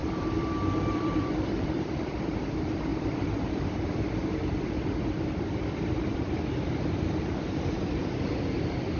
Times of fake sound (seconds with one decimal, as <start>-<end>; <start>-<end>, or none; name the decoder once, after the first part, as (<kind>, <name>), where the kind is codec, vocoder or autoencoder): 0.9-9.0 (vocoder, BigVGAN v2)